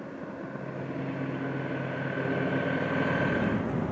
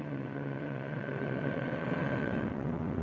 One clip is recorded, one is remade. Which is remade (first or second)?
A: second